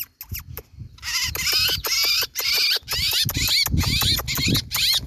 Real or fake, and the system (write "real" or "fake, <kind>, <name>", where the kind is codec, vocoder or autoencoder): real